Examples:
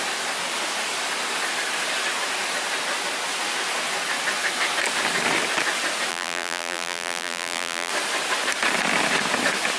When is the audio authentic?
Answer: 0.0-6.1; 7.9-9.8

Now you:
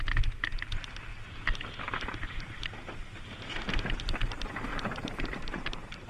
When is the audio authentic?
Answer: 0.0-4.7

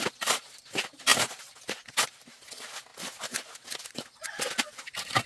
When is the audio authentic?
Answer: 1.1-2.5; 2.9-3.9

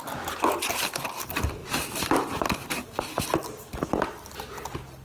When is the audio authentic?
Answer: 0.0-5.0

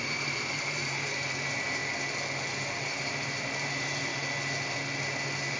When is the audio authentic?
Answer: 1.8-2.8; 4.1-5.6

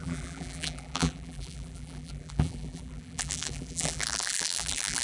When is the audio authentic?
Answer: none